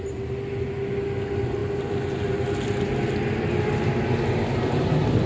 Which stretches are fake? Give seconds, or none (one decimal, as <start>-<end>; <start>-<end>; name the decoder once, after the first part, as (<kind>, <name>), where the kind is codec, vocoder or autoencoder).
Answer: none